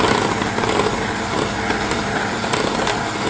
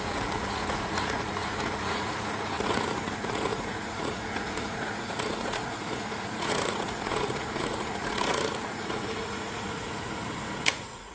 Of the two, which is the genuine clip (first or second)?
first